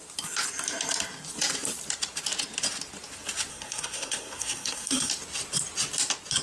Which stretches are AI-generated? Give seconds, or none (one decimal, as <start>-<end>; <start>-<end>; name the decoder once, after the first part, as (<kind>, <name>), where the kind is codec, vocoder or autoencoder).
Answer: 3.5-5.1 (codec, SNAC)